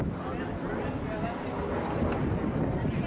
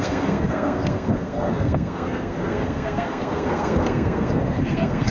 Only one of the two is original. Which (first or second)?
first